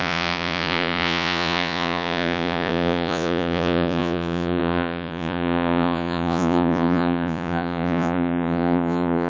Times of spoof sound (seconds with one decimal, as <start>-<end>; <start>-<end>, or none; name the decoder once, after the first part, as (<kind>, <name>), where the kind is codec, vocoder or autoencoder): 0.0-9.3 (vocoder, Vocos)